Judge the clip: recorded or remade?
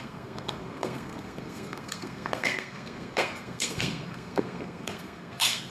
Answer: remade